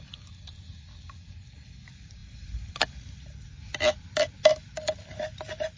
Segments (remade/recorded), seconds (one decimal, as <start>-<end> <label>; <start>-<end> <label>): 0.0-5.8 recorded